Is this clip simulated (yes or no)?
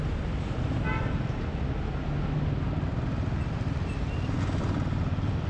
no